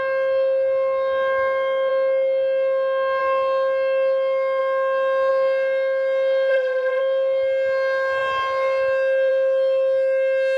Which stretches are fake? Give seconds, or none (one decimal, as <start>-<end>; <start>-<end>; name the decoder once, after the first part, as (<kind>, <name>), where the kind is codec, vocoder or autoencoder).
6.5-7.0 (vocoder, BigVGAN v2)